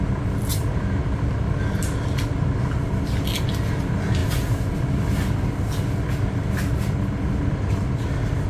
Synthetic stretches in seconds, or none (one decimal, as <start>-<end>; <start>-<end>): none